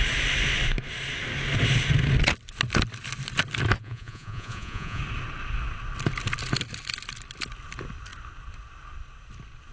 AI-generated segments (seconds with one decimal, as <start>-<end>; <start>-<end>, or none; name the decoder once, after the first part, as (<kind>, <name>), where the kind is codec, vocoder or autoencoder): 3.8-5.0 (vocoder, Vocos)